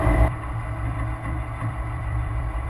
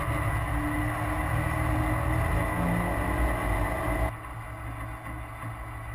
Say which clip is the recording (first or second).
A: second